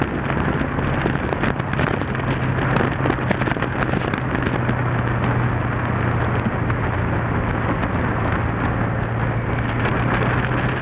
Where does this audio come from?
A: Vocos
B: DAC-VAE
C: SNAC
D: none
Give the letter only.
D